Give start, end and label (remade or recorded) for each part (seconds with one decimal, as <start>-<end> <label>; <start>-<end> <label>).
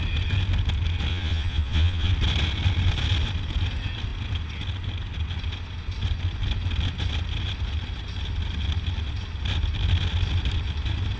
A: 0.0-1.1 recorded; 1.1-2.1 remade; 2.1-11.2 recorded